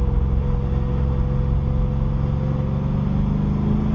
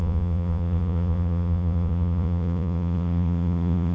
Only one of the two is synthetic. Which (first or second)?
second